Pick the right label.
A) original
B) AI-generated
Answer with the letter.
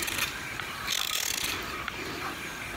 A